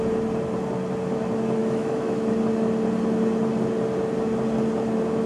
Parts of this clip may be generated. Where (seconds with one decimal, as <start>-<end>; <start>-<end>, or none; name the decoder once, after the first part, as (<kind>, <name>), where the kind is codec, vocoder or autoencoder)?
1.6-2.4 (autoencoder, DAC-VAE)